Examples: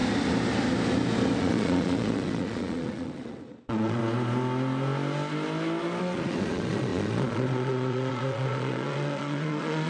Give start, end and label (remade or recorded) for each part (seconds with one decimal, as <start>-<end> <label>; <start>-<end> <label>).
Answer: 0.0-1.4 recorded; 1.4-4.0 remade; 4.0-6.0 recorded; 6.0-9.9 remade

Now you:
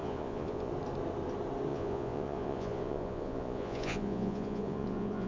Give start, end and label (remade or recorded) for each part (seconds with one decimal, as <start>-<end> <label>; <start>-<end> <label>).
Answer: 0.0-0.7 remade; 0.7-1.7 recorded; 1.7-5.3 remade

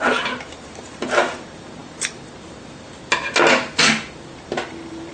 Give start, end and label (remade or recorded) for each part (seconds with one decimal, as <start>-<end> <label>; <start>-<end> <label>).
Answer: 0.0-5.1 recorded

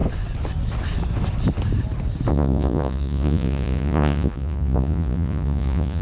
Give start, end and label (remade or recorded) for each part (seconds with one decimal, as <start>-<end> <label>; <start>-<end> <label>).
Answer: 0.0-2.3 recorded; 2.3-6.0 remade

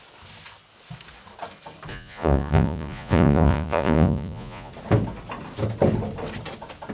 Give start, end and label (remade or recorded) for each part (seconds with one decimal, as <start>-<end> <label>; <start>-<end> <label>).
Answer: 0.0-1.9 recorded; 1.9-4.7 remade; 4.7-6.9 recorded

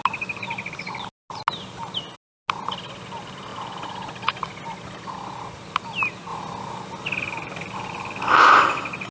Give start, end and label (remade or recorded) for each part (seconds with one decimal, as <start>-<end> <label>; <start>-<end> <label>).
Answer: 0.0-9.1 recorded

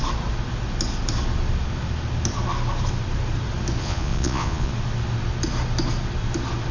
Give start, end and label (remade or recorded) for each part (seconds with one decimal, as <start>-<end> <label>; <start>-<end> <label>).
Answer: 0.0-3.8 recorded; 3.8-4.7 remade; 4.7-6.7 recorded

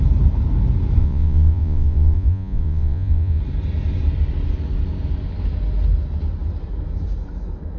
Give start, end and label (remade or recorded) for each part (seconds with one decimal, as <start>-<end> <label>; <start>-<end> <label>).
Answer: 0.0-1.0 recorded; 1.0-3.4 remade; 3.4-7.8 recorded